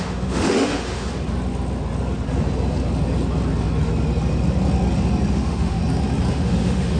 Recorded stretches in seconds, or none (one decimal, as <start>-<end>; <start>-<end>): 1.1-5.3; 5.8-6.3